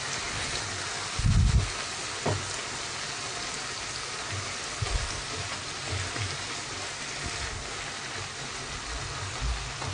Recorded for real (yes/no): yes